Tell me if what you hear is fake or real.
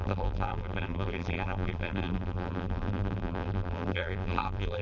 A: fake